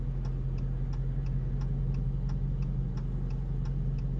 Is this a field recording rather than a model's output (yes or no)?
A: yes